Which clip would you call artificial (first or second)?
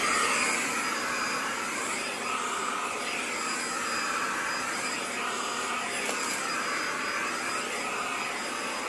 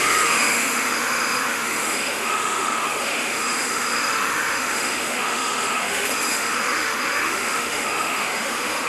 second